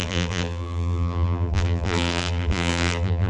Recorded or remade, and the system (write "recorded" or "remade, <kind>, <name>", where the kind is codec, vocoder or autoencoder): remade, vocoder, BigVGAN v2